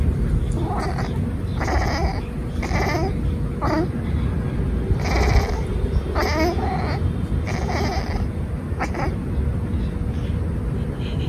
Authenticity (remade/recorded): recorded